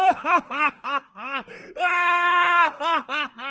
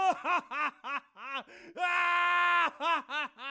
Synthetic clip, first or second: first